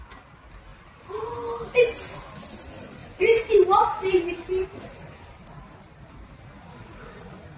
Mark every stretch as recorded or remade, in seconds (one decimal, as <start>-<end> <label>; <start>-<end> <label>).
0.0-0.7 recorded; 0.7-1.6 remade; 1.6-3.0 recorded; 3.0-7.6 remade